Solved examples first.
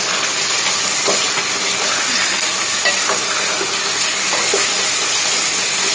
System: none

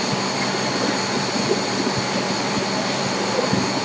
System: none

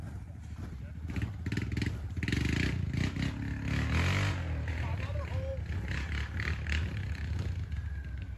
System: none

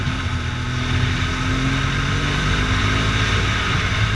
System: none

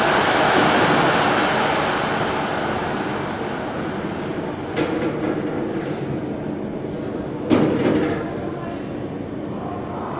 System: none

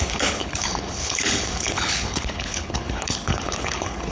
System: codec, HILCodec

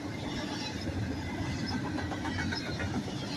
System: none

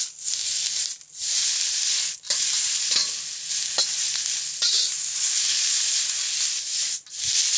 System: none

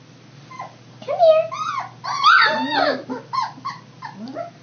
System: none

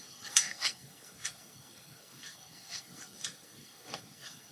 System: codec, SNAC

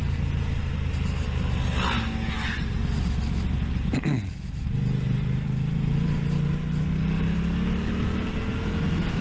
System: none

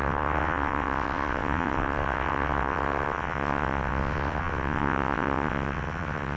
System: vocoder, WaveNeXt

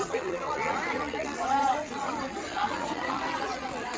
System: vocoder, WaveNeXt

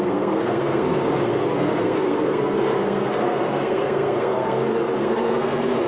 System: codec, SNAC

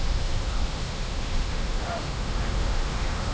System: autoencoder, DAC-VAE